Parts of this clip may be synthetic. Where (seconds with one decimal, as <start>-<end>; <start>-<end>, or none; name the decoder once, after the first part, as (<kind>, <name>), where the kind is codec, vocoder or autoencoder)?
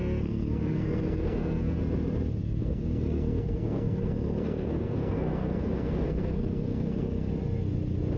0.0-1.8 (codec, SNAC); 2.4-7.3